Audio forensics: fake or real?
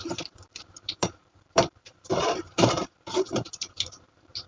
fake